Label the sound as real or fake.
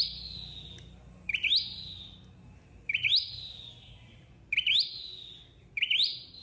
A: real